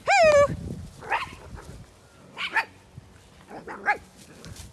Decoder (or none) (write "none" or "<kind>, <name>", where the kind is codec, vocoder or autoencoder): none